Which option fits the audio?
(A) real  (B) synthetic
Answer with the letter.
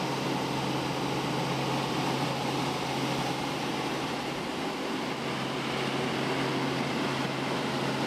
A